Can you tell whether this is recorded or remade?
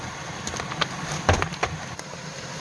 recorded